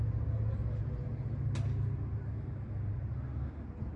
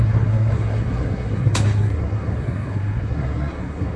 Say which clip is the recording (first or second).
first